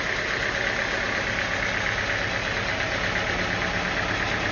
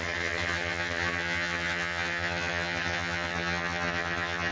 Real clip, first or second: first